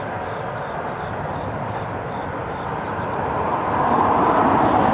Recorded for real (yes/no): yes